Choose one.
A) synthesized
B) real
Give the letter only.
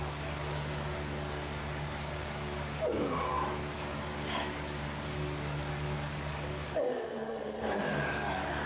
A